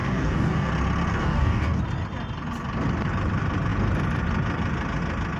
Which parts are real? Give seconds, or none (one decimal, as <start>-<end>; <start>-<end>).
0.7-1.1; 1.8-5.4